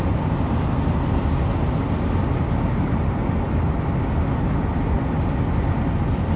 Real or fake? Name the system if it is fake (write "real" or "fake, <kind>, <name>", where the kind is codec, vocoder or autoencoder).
real